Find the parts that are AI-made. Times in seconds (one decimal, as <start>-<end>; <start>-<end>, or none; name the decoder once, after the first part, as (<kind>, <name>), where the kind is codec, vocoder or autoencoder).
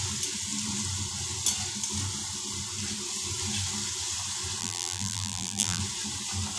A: 4.6-5.8 (vocoder, BigVGAN v2)